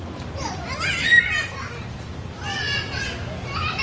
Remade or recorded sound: recorded